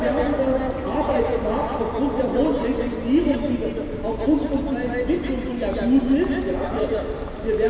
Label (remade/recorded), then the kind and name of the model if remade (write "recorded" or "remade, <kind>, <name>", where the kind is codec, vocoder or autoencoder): recorded